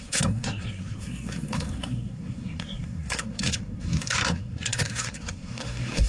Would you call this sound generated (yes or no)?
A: yes